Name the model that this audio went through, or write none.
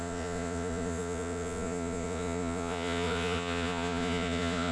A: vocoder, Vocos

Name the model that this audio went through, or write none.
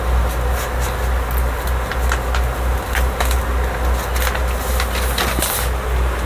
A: none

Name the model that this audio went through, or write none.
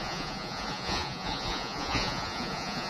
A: vocoder, Vocos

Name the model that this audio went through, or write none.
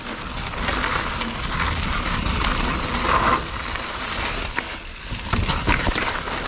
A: none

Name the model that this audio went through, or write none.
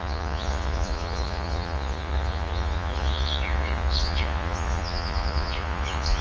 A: vocoder, Vocos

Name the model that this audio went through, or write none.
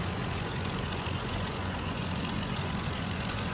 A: vocoder, Vocos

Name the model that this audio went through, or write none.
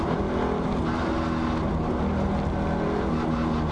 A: none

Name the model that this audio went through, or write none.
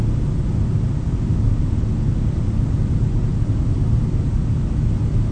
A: none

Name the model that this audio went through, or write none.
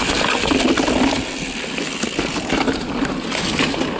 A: none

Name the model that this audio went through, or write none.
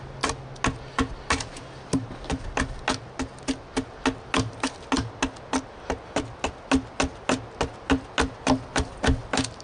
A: none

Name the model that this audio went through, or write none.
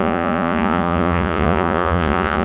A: vocoder, Vocos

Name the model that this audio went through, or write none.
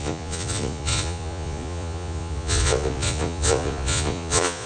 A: vocoder, Vocos